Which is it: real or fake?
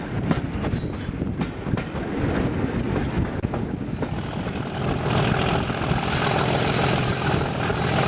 real